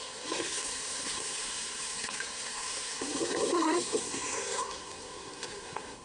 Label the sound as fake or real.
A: fake